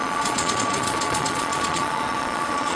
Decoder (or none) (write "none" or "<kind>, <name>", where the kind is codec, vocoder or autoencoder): vocoder, Vocos